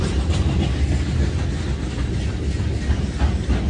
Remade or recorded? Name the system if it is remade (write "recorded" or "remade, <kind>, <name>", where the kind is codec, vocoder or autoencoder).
recorded